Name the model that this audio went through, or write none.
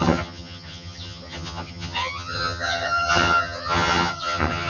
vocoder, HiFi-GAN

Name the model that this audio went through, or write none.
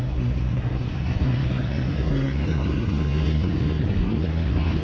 codec, SNAC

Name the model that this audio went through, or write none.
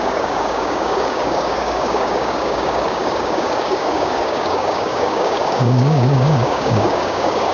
codec, DAC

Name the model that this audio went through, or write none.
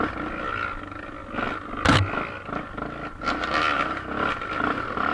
none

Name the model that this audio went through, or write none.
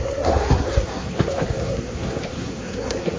codec, SNAC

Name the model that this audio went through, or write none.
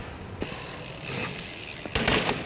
none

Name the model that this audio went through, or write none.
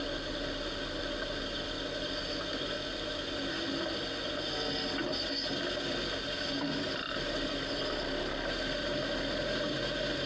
none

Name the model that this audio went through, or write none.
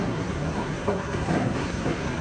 codec, SNAC